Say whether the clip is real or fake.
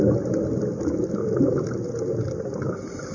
real